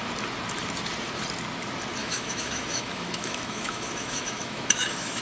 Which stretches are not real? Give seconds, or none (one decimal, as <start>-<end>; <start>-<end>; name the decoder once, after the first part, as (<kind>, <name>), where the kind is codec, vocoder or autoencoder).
2.0-5.2 (autoencoder, DAC-VAE)